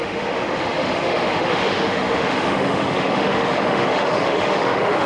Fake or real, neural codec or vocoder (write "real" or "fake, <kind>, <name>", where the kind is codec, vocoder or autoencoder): fake, autoencoder, DAC-VAE